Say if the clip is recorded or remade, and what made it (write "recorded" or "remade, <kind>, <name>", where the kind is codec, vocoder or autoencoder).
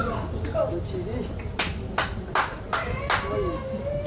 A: recorded